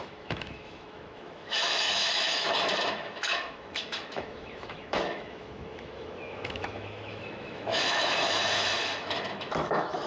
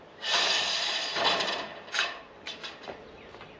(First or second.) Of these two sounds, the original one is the second